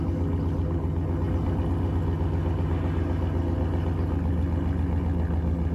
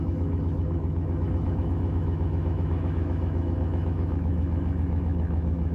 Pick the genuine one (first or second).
first